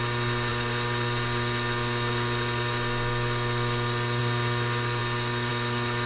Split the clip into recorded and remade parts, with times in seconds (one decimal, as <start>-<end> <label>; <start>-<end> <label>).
0.0-6.1 recorded